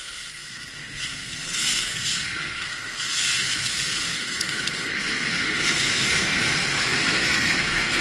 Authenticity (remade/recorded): remade